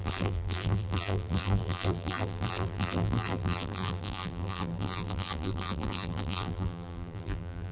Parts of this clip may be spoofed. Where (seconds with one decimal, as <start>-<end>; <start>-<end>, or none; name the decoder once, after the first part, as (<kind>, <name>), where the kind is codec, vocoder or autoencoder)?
0.0-7.7 (vocoder, BigVGAN v2)